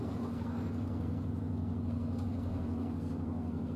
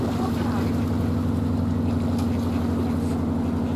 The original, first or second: second